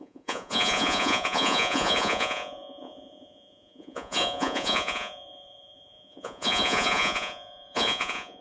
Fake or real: fake